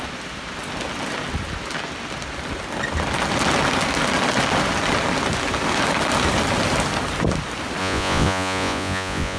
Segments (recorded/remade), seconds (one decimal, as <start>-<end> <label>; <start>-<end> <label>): 0.0-7.8 recorded; 7.8-9.4 remade